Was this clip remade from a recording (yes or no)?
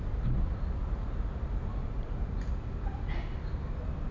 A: no